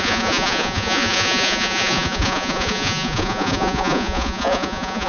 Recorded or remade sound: remade